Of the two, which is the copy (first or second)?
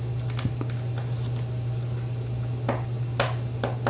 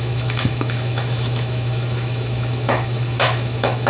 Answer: second